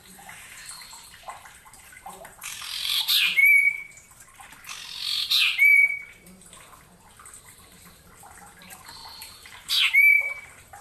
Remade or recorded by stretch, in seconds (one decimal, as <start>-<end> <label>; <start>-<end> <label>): 0.0-3.4 remade; 3.4-7.4 recorded; 7.4-10.8 remade